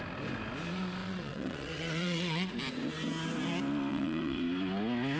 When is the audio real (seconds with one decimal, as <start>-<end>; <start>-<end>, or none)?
0.0-1.0; 2.5-3.9; 4.4-5.2